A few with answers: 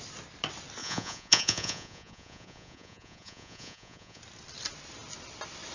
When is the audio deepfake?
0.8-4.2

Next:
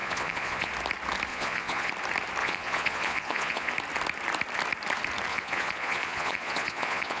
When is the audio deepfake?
0.0-0.7; 1.3-1.9; 2.4-3.7; 5.3-7.2